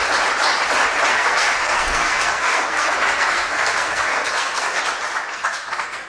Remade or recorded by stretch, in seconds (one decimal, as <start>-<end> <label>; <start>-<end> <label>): 0.0-1.1 recorded; 1.1-4.8 remade; 4.8-5.3 recorded; 5.3-6.1 remade